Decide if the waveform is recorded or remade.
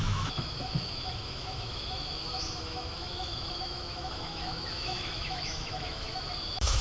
remade